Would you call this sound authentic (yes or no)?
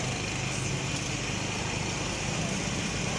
yes